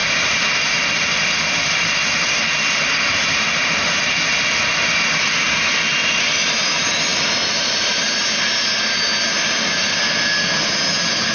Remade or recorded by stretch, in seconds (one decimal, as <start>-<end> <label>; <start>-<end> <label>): 0.0-4.2 remade; 4.2-7.1 recorded; 7.1-8.0 remade; 8.0-11.3 recorded